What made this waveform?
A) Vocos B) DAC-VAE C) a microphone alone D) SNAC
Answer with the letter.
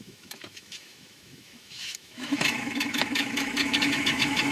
B